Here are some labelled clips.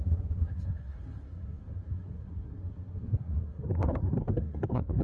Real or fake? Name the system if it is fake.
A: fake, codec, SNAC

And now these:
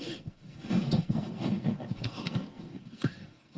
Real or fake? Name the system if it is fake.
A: fake, codec, SNAC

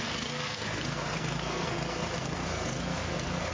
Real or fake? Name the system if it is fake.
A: fake, codec, SNAC